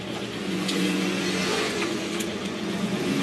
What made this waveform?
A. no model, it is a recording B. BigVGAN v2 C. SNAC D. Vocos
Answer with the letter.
D